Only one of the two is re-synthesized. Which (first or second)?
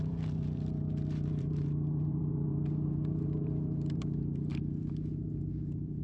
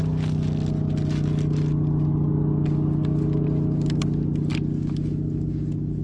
first